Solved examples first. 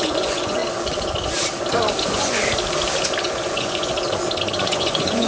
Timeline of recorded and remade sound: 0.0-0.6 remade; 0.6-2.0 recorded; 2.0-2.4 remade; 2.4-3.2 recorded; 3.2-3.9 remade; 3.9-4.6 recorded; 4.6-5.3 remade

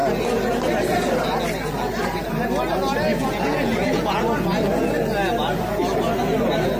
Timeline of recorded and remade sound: 0.0-3.2 recorded; 3.2-4.2 remade; 4.2-6.8 recorded

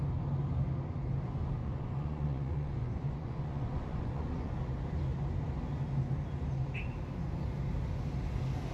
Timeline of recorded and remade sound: 0.0-1.6 recorded; 1.6-4.5 remade; 4.5-8.7 recorded

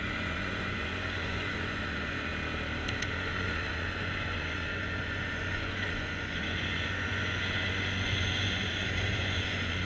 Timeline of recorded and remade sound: 0.0-2.3 remade; 2.3-3.0 recorded; 3.0-9.8 remade

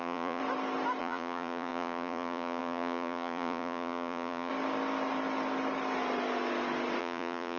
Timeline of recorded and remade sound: 0.0-0.4 remade; 0.4-1.0 recorded; 1.0-4.5 remade; 4.5-7.0 recorded; 7.0-7.6 remade

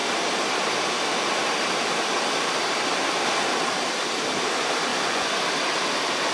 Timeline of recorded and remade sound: 0.0-4.9 recorded; 4.9-5.4 remade; 5.4-6.3 recorded